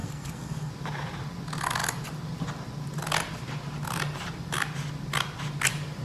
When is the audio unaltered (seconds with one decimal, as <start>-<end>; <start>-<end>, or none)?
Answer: 0.7-6.0